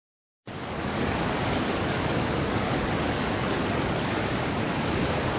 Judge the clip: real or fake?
fake